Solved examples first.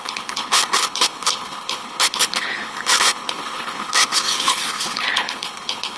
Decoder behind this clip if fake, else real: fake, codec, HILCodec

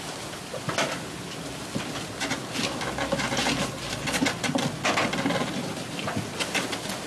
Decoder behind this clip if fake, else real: real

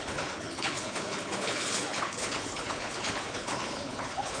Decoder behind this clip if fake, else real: fake, codec, HILCodec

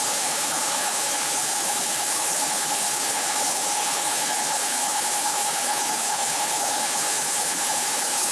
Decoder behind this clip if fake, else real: fake, codec, HILCodec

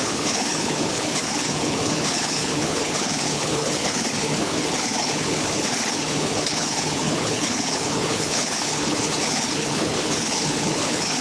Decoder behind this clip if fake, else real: fake, codec, HILCodec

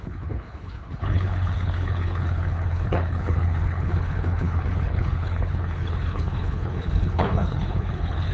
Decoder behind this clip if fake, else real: fake, codec, HILCodec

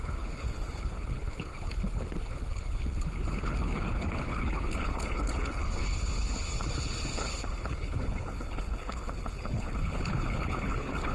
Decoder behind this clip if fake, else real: fake, codec, HILCodec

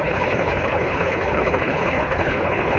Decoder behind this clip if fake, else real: fake, codec, HILCodec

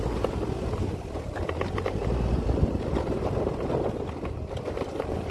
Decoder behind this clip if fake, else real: real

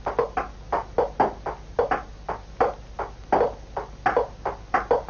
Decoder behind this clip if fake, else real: real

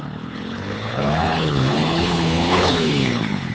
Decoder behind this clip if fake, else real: fake, codec, HILCodec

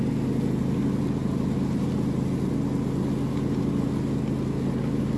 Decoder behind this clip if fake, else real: real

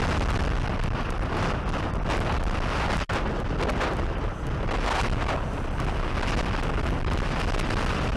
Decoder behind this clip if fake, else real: real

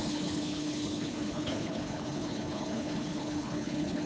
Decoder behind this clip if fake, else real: fake, codec, HILCodec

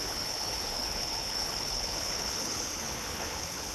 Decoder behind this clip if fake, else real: fake, codec, HILCodec